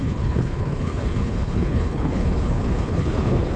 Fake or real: fake